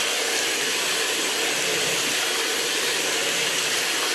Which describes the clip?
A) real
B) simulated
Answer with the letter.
B